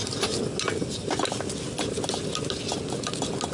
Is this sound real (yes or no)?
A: yes